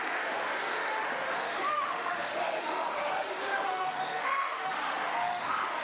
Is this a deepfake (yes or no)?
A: yes